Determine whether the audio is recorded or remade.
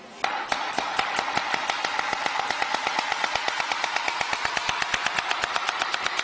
recorded